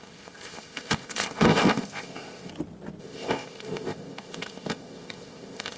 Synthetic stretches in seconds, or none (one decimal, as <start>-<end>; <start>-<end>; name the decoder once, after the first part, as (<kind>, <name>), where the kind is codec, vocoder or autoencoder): 0.0-2.5 (codec, ZipCodec); 3.0-5.8

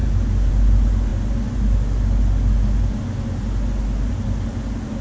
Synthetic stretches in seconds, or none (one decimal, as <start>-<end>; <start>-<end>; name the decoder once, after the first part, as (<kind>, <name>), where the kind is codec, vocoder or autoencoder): none